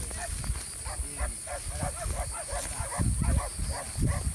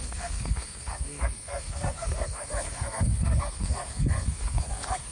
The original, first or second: first